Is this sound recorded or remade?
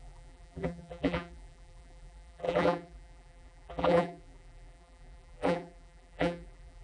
remade